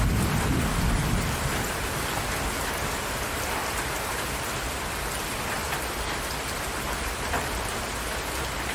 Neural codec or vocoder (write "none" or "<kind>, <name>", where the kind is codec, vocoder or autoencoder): vocoder, BigVGAN v2